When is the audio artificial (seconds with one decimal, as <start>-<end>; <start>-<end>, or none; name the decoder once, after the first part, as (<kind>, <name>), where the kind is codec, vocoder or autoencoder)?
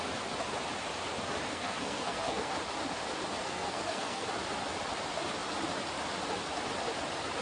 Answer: 1.5-2.5 (codec, SNAC); 3.4-4.3